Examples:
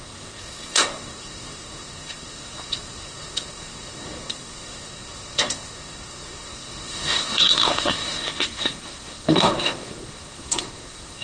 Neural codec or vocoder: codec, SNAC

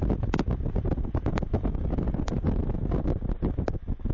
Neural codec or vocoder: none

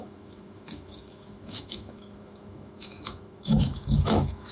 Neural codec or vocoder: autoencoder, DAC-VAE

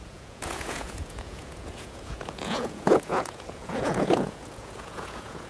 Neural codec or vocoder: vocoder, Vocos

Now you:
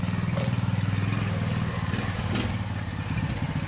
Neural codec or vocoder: none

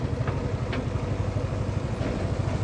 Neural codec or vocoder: none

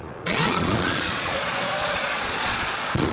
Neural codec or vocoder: vocoder, Vocos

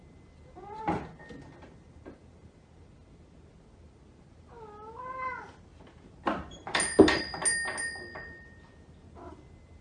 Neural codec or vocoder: none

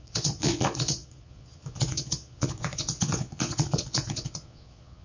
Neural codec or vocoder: vocoder, Vocos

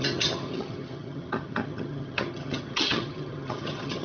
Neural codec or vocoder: vocoder, HiFi-GAN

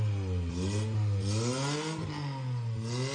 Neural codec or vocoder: none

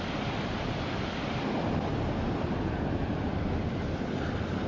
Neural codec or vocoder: vocoder, BigVGAN v2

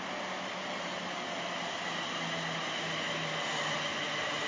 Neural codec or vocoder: none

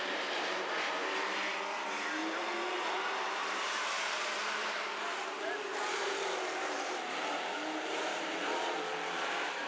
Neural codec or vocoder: vocoder, BigVGAN v2